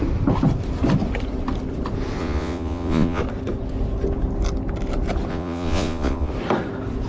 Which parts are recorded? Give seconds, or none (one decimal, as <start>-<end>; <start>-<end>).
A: 0.0-2.2; 3.2-5.3; 6.3-7.1